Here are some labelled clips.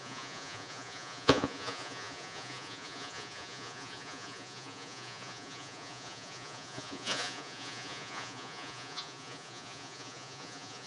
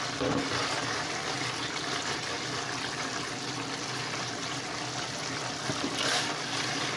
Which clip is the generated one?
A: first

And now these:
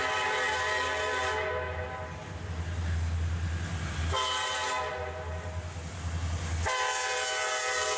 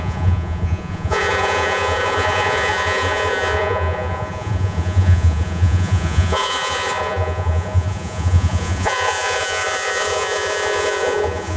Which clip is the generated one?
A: second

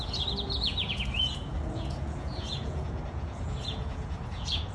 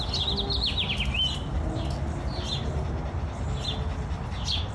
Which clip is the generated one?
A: first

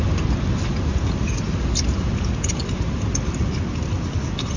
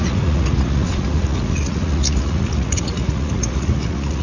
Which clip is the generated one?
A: second